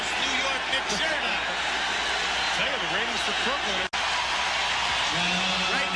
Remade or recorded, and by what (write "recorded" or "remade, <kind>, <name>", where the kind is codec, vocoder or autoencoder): recorded